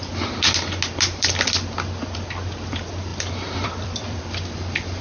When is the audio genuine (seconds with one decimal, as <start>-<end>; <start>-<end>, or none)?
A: 0.0-3.1; 4.2-5.0